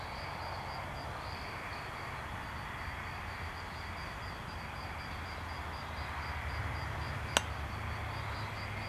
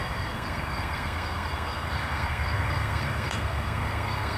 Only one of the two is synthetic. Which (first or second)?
second